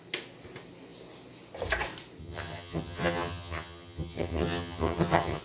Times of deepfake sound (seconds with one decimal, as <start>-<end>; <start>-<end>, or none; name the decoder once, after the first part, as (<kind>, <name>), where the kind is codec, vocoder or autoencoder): 2.2-5.4 (vocoder, HiFi-GAN)